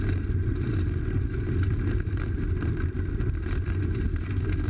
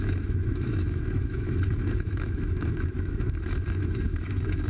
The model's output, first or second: second